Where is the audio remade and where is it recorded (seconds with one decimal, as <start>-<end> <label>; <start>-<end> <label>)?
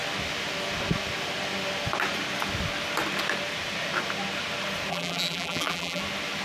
0.0-4.9 recorded; 4.9-6.0 remade; 6.0-6.4 recorded